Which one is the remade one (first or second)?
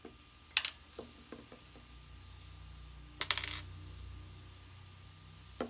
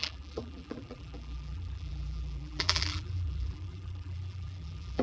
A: second